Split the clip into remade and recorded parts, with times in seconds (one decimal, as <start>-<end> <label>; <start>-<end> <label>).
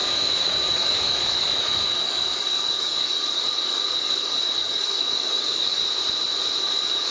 0.0-5.8 remade; 5.8-6.6 recorded; 6.6-7.1 remade